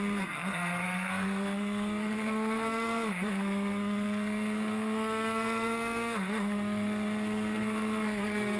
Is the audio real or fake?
fake